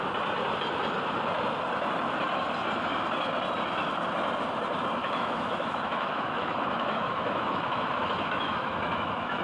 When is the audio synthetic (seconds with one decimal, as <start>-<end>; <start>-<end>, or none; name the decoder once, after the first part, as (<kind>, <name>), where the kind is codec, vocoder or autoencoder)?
5.0-9.4 (autoencoder, DAC-VAE)